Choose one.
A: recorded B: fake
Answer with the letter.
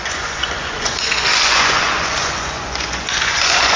B